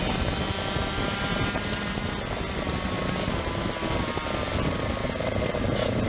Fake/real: real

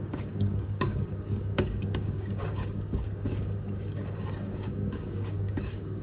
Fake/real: fake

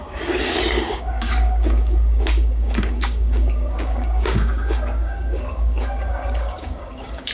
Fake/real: fake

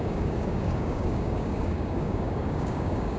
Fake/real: fake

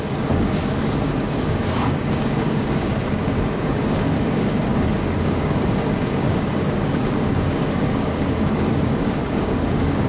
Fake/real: fake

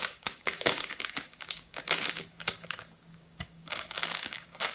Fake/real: fake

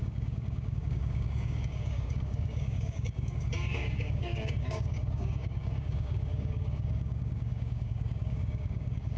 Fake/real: fake